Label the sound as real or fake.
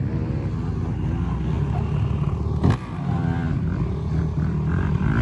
real